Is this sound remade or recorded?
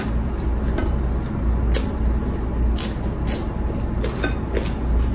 recorded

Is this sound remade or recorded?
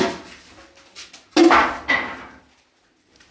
recorded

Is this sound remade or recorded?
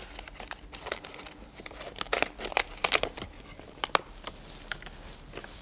recorded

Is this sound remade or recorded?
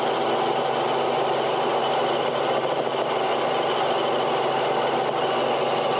recorded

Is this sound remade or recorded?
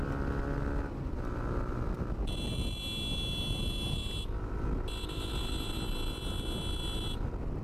recorded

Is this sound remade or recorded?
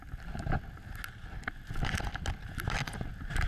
recorded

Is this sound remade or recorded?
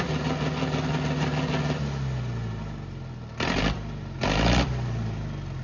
recorded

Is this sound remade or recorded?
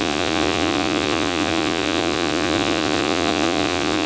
remade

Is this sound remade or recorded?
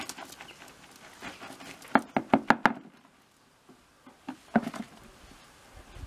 recorded